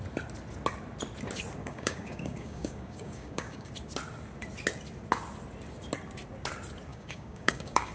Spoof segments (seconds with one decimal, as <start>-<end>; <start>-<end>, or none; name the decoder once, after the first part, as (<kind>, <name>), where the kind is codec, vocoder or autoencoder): 1.6-3.7 (codec, DAC); 6.9-7.9